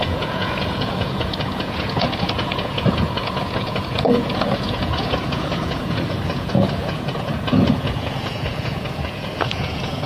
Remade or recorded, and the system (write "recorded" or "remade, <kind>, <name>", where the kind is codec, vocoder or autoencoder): remade, vocoder, Vocos